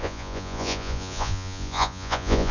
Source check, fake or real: fake